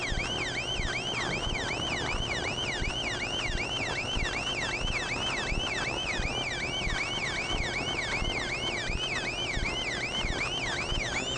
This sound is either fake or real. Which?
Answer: real